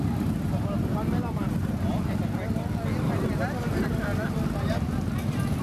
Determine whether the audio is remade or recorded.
recorded